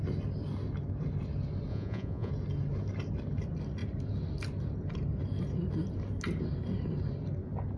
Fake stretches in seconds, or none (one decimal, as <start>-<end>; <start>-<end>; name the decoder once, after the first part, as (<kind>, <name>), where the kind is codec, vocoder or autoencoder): 1.7-2.3 (vocoder, Vocos)

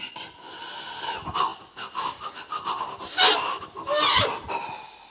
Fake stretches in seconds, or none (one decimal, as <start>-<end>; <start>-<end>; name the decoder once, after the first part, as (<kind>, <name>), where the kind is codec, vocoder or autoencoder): none

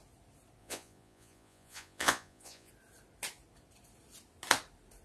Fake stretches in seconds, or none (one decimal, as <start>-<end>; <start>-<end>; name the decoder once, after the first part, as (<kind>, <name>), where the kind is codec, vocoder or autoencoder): 0.6-2.7 (vocoder, Vocos)

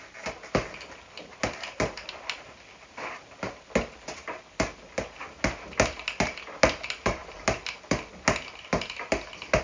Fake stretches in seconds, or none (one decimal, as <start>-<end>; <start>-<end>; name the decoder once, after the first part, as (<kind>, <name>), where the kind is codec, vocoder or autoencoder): none

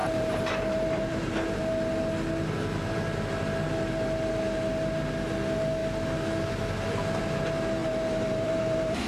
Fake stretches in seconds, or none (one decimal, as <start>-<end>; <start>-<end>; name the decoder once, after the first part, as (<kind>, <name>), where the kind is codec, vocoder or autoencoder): 0.0-1.6 (vocoder, BigVGAN v2); 7.8-9.1

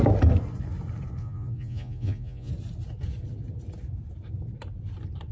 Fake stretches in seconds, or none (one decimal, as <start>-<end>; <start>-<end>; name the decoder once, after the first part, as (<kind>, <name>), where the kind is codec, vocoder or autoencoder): 1.2-2.5 (vocoder, Vocos)

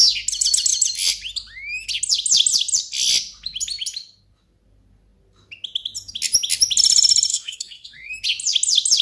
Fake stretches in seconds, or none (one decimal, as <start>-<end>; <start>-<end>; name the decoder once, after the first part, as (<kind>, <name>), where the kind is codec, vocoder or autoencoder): 7.3-8.1 (codec, SNAC)